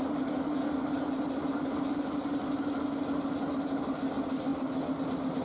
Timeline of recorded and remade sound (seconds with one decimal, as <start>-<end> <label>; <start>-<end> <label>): 0.0-5.4 recorded